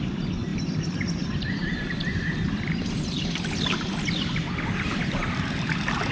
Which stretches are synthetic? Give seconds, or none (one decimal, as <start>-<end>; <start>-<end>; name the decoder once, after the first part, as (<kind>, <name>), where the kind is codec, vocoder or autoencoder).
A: 0.5-3.6 (vocoder, BigVGAN v2); 5.2-6.1